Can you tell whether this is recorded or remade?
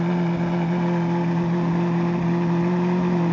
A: recorded